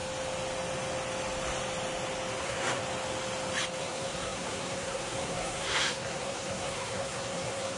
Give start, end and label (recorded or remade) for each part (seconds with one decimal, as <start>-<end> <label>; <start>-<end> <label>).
0.0-2.4 recorded; 2.4-2.8 remade; 2.8-3.8 recorded; 3.8-7.8 remade

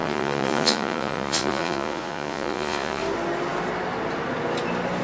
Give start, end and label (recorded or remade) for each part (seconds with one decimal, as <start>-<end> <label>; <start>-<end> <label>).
0.0-3.0 remade; 3.0-5.0 recorded

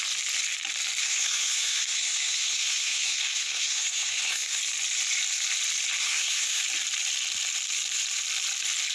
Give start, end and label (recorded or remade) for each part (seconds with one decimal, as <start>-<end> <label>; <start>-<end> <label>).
0.0-1.0 recorded; 1.0-4.6 remade; 4.6-6.0 recorded; 6.0-6.6 remade; 6.6-8.9 recorded

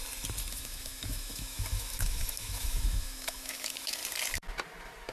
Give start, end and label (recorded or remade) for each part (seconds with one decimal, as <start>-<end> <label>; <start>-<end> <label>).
0.0-0.5 recorded; 0.5-4.0 remade; 4.0-5.1 recorded

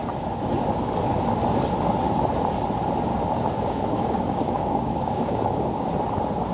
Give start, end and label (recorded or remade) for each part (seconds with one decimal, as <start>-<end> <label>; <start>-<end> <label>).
0.0-3.1 recorded; 3.1-5.9 remade; 5.9-6.5 recorded

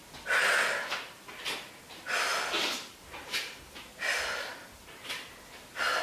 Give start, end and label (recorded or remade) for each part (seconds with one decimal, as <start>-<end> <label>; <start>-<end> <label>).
0.0-6.0 recorded

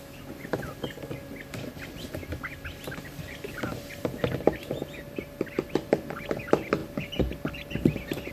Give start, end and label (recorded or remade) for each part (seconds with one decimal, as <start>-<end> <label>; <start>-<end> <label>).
0.0-6.8 recorded; 6.8-8.3 remade

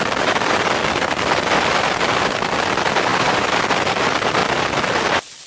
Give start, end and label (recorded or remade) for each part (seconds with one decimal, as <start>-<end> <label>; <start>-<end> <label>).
0.0-3.1 recorded; 3.1-3.7 remade; 3.7-4.4 recorded; 4.4-5.5 remade